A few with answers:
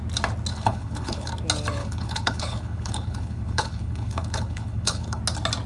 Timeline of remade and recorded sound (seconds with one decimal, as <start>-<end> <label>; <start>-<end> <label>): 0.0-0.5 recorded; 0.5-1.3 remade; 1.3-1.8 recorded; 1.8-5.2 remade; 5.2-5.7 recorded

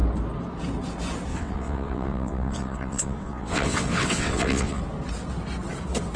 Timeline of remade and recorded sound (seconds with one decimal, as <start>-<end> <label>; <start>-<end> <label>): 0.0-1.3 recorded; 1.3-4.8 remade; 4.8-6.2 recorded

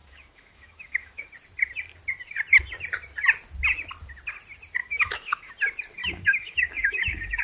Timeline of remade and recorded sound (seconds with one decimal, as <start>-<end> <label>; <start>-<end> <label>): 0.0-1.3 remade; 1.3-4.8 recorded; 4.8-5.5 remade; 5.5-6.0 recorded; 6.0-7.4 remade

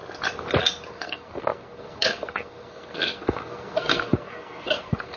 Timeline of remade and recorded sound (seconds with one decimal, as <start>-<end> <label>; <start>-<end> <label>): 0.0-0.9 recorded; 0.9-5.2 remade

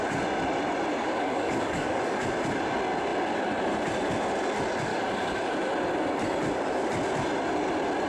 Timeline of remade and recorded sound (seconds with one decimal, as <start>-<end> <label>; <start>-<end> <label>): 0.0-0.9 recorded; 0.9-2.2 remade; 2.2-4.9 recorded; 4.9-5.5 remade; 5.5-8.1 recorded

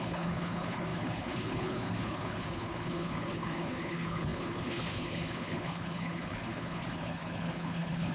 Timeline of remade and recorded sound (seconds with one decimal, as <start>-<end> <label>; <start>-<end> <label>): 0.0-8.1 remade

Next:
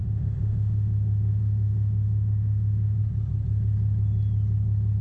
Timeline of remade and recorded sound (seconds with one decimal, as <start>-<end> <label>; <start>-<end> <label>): 0.0-3.0 remade; 3.0-5.0 recorded

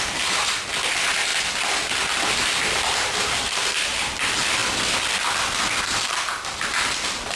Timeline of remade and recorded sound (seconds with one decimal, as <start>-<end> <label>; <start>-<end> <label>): 0.0-1.3 remade; 1.3-2.3 recorded; 2.3-4.6 remade; 4.6-6.4 recorded; 6.4-7.4 remade